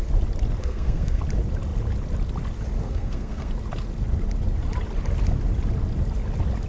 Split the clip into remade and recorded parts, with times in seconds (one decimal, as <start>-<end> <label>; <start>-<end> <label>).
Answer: 0.0-0.6 recorded; 0.6-1.2 remade; 1.2-2.8 recorded; 2.8-3.5 remade; 3.5-6.7 recorded